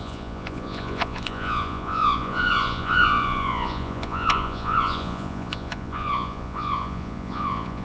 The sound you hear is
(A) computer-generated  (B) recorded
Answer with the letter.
A